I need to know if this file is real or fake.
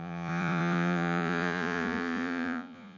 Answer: fake